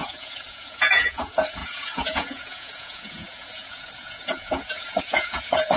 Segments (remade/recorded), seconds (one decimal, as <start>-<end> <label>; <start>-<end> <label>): 0.0-5.8 remade